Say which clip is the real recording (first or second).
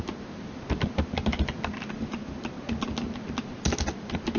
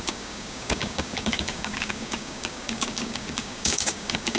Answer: first